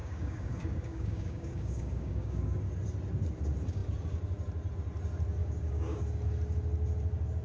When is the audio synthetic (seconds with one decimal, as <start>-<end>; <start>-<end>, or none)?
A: 0.0-2.6; 5.4-6.0